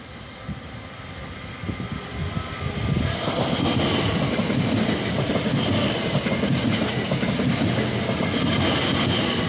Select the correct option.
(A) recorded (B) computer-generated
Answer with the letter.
A